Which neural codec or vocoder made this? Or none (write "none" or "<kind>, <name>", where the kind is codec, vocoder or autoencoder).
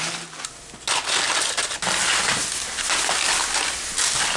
none